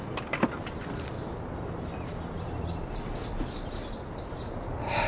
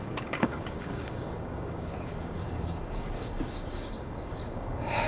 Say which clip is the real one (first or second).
first